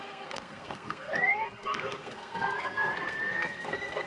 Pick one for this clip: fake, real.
fake